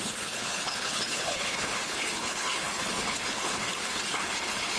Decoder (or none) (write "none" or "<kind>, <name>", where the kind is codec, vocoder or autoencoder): codec, HILCodec